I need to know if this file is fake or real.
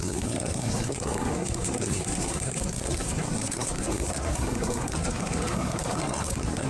fake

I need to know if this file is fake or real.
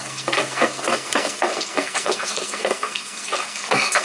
fake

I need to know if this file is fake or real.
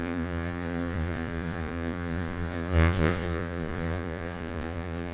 fake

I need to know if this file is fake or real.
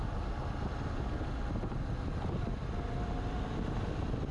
real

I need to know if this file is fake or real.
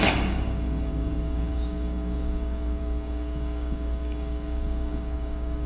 fake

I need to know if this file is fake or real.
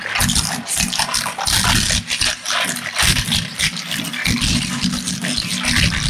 real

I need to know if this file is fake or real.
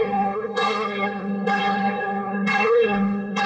fake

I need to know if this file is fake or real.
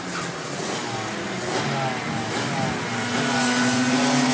real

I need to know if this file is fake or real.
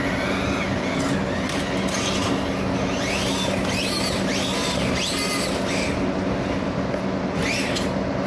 real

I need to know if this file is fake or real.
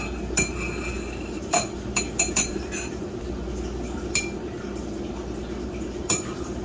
real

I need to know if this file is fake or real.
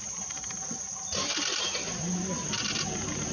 real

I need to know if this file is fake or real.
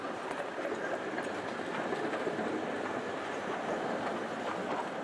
real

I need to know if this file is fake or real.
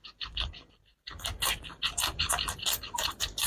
fake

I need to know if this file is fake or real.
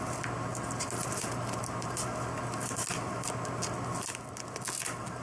real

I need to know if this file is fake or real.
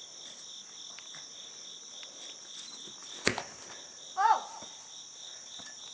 real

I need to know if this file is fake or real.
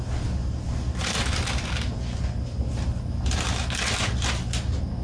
real